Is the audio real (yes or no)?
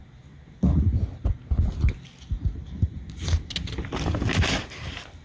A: yes